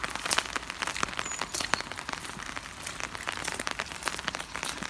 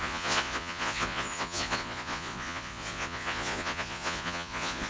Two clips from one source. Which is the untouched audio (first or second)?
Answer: first